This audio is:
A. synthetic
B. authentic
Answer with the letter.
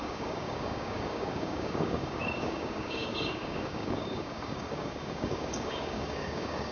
A